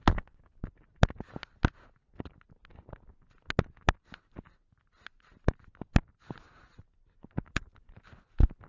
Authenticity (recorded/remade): recorded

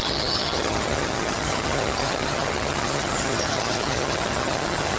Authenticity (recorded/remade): remade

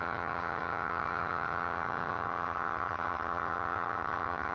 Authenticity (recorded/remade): remade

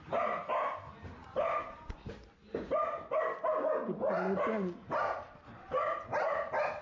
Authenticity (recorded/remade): recorded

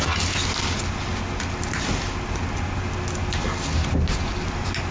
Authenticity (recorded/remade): recorded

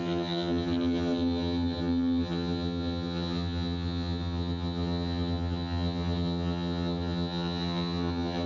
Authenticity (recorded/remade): remade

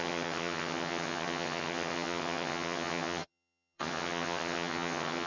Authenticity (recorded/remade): remade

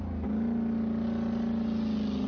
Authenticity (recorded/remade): recorded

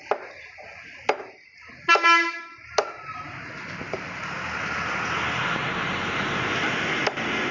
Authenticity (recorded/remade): recorded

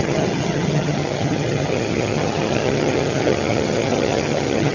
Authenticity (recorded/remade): remade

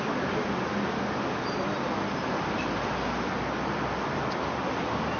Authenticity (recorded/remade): recorded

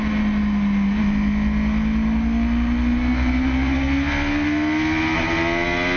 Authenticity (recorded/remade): recorded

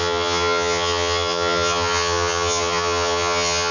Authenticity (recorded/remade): remade